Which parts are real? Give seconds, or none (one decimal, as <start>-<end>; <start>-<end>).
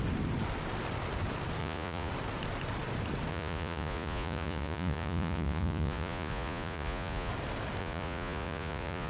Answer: 0.0-1.6; 2.1-3.3; 7.3-7.8